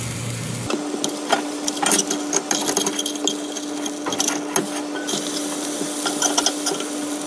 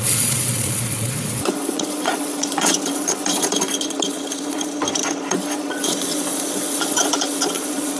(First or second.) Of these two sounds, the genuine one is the first